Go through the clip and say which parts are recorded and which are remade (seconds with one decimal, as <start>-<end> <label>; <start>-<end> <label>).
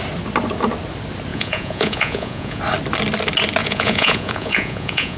0.0-1.3 recorded; 1.3-2.6 remade; 2.6-3.6 recorded; 3.6-5.2 remade